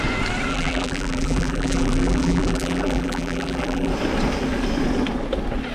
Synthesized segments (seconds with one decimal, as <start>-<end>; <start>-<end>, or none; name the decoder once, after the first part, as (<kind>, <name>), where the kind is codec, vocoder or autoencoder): 0.5-3.9 (vocoder, BigVGAN v2)